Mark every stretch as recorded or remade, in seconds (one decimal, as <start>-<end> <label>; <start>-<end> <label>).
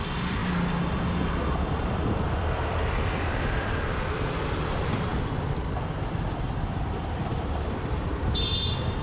0.0-0.4 remade; 0.4-1.2 recorded; 1.2-9.0 remade